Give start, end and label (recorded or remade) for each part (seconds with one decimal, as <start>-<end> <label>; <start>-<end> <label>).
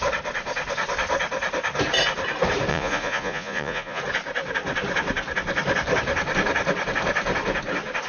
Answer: 0.0-2.7 recorded; 2.7-4.0 remade; 4.0-8.1 recorded